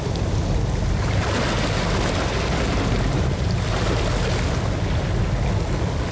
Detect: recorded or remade recorded